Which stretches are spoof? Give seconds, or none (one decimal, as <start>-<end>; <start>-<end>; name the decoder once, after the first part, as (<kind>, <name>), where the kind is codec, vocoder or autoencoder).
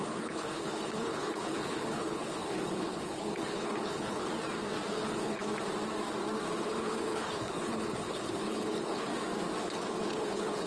0.0-4.3 (codec, HILCodec); 4.9-5.4; 6.6-9.1; 9.6-10.7